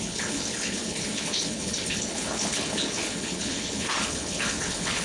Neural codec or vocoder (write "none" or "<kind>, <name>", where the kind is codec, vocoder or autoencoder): codec, HILCodec